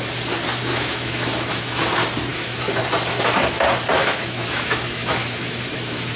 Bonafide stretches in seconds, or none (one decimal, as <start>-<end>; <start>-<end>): 0.0-0.7; 1.9-2.3; 2.8-4.0